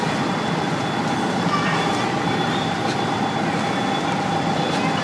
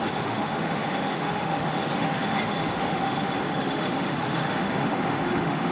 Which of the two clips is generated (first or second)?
second